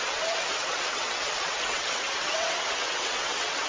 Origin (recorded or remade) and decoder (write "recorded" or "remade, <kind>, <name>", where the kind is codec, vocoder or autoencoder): remade, vocoder, WaveNeXt